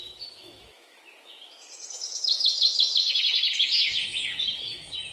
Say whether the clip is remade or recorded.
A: remade